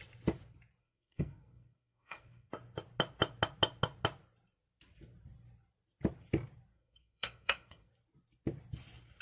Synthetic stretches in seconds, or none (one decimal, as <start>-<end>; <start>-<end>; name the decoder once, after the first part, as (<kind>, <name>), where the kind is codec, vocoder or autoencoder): 0.8-2.5 (codec, SNAC); 6.7-7.9

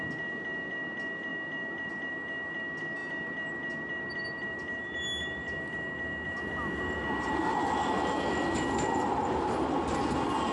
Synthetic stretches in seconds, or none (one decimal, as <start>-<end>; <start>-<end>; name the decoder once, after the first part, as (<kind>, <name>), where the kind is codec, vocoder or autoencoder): none

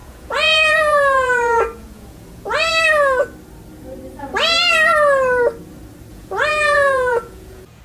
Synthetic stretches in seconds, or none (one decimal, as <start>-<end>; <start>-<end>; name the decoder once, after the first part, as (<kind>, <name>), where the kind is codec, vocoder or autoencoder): 0.0-2.7 (vocoder, Vocos); 6.1-7.8

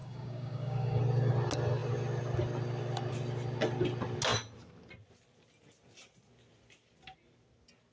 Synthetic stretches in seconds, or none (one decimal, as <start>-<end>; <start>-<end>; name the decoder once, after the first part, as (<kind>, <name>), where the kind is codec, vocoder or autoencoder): 0.0-1.0 (codec, DAC)

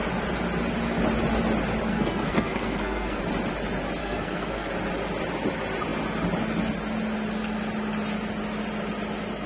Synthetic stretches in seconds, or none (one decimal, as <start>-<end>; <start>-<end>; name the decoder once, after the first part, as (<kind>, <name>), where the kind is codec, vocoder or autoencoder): 1.9-3.2 (codec, SNAC); 4.0-4.7

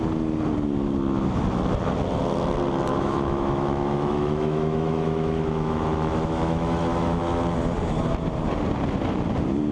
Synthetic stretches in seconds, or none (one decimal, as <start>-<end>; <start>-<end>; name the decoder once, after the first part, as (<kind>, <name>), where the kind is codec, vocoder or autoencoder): 2.9-7.2 (autoencoder, DAC-VAE)

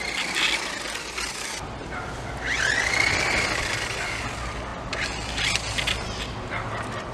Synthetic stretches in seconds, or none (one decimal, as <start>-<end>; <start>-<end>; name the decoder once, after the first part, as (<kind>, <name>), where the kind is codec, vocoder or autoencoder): none